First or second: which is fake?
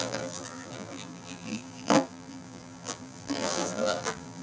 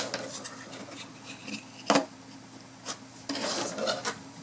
first